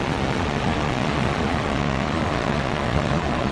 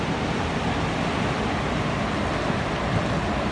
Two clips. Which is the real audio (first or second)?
second